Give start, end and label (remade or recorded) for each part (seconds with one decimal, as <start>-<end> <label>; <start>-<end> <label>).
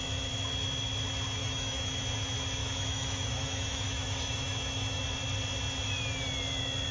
0.0-1.4 recorded; 1.4-1.9 remade; 1.9-2.6 recorded; 2.6-5.0 remade; 5.0-6.9 recorded